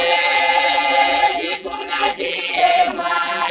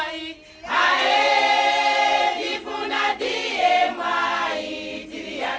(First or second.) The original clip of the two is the second